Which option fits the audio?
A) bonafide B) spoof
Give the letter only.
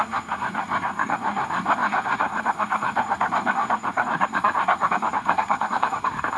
B